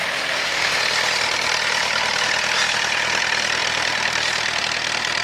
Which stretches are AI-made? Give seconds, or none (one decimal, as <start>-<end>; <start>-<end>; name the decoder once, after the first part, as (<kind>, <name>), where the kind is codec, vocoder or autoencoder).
0.0-0.8 (autoencoder, DAC-VAE)